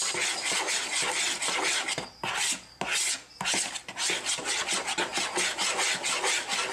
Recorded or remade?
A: recorded